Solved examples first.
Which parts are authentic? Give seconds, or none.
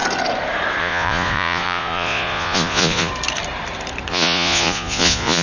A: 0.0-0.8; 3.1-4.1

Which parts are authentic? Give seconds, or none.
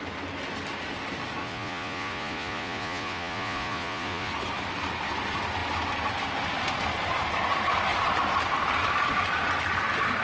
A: 0.0-1.4; 4.3-10.2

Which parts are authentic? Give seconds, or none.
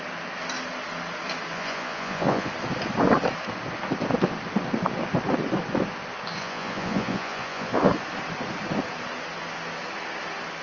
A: 0.0-1.5; 2.5-6.4; 7.9-10.6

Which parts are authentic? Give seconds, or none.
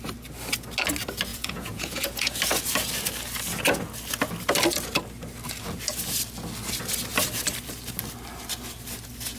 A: 0.0-1.3; 2.4-9.4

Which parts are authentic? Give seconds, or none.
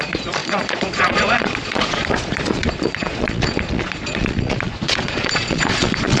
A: none